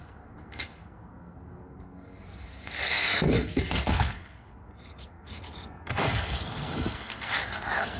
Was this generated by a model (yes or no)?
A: yes